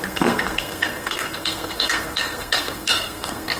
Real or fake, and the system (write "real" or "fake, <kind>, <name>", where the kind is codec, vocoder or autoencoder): fake, codec, SNAC